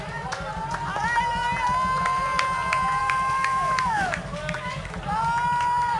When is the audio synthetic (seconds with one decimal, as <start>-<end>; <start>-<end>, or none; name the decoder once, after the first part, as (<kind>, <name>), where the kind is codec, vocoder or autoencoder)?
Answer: 3.0-4.9 (codec, DAC)